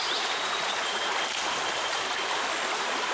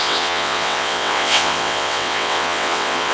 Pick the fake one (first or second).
second